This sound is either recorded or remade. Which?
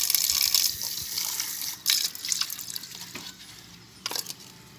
recorded